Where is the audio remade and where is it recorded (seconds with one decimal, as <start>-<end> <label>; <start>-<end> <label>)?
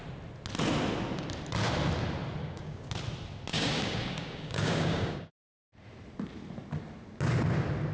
0.0-2.4 recorded; 2.4-2.9 remade; 2.9-3.5 recorded; 3.5-5.7 remade; 5.7-7.9 recorded